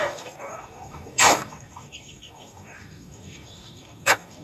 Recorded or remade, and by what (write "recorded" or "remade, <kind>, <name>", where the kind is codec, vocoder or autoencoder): remade, codec, DAC